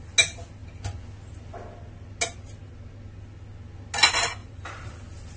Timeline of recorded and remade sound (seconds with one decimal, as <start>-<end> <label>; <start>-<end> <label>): 0.0-4.4 recorded; 4.4-4.9 remade; 4.9-5.4 recorded